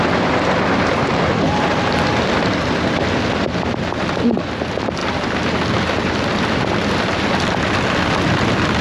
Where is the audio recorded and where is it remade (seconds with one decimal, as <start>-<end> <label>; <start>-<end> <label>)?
0.0-8.8 recorded